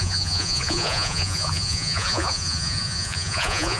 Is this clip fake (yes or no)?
yes